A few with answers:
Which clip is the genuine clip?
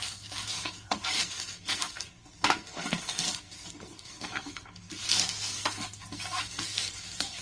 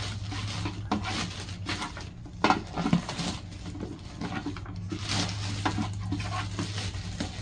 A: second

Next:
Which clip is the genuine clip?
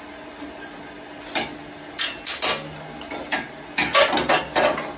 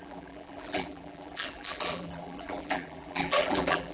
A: first